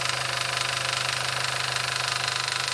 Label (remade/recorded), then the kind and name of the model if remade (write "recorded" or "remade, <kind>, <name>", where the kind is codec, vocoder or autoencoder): recorded